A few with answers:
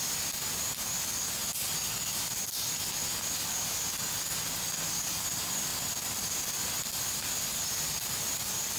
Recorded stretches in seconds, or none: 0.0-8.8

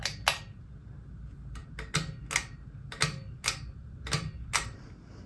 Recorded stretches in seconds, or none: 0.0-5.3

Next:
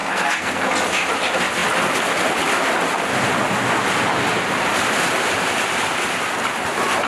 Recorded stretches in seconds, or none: 0.7-7.1

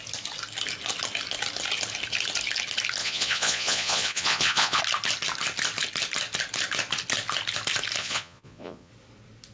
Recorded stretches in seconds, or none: 0.0-3.0; 4.8-8.0; 8.9-9.5

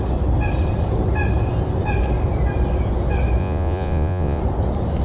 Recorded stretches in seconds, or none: 0.0-3.4; 4.4-5.0